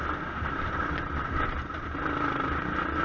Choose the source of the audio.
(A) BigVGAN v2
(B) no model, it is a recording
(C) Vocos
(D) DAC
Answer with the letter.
B